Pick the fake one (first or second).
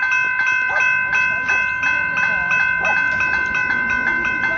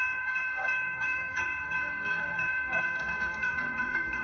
second